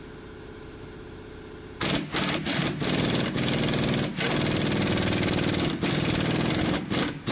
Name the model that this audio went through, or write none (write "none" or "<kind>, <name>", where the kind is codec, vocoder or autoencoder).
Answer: none